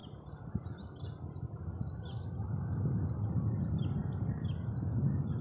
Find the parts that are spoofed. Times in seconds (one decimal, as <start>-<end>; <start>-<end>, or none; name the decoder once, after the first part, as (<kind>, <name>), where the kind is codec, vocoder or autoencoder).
none